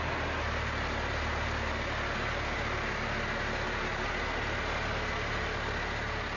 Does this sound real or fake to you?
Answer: real